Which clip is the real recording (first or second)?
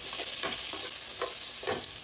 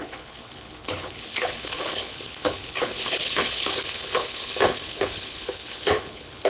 first